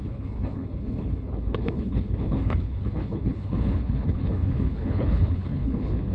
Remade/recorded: remade